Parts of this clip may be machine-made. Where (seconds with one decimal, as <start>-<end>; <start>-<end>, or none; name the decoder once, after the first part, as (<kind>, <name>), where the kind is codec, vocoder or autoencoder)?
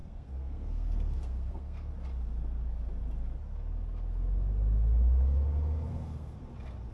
0.0-1.9 (codec, SNAC); 5.9-6.4